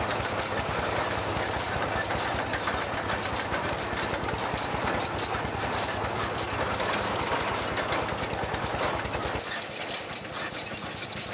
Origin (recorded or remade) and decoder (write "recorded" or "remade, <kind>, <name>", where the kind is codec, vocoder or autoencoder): remade, vocoder, BigVGAN v2